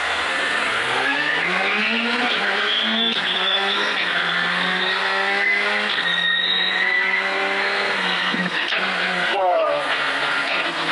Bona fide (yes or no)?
no